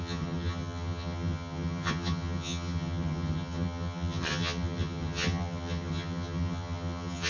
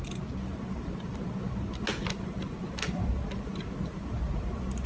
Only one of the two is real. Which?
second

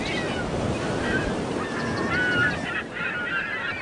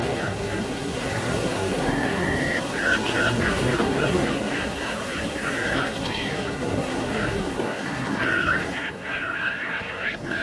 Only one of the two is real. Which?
first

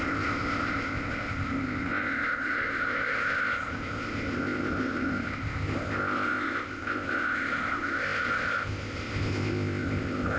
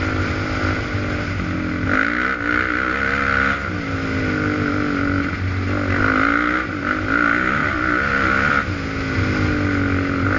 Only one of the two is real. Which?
second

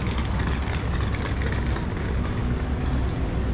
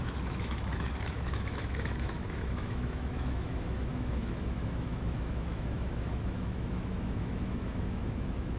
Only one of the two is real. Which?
first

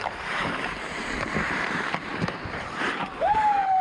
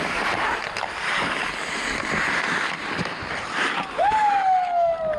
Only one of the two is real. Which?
second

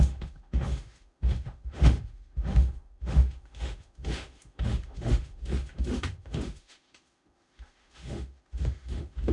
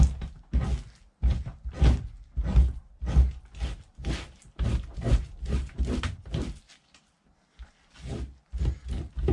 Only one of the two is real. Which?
second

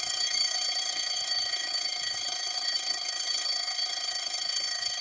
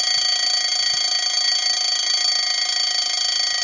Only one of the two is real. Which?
second